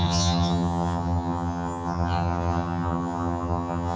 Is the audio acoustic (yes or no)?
no